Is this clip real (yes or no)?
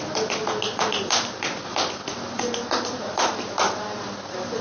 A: yes